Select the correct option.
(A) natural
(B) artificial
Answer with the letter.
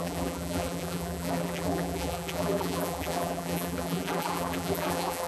B